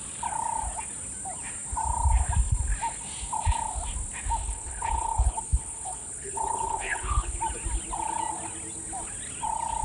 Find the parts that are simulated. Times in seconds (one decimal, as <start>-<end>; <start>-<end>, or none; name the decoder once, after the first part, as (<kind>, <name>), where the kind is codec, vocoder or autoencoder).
4.4-7.4 (codec, HILCodec)